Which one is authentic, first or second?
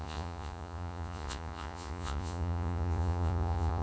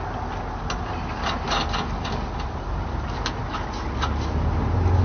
second